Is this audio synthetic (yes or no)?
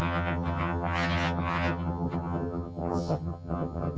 yes